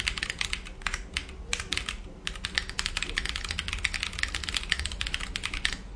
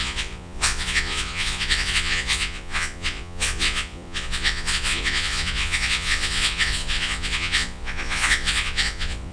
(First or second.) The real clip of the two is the first